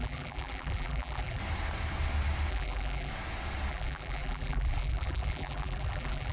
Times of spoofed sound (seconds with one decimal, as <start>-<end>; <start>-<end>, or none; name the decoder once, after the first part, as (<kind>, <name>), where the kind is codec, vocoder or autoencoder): 0.0-1.4 (vocoder, BigVGAN v2); 2.5-3.1; 3.7-6.3